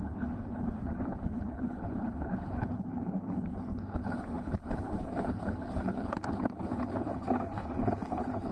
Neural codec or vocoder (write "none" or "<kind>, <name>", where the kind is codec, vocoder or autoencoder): codec, HILCodec